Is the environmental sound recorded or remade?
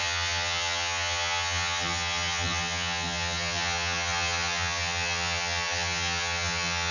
remade